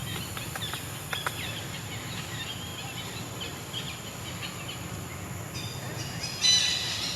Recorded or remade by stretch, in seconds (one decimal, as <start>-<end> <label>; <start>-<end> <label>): 0.0-1.6 recorded; 1.6-2.7 remade; 2.7-7.2 recorded